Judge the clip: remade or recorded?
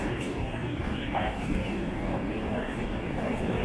remade